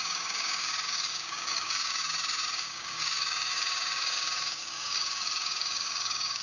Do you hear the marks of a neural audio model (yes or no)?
yes